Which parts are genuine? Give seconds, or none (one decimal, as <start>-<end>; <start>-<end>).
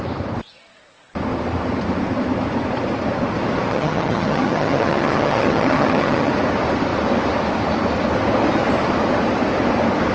0.0-3.7; 6.3-10.1